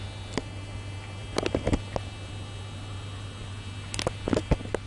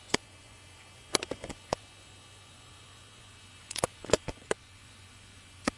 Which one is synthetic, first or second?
second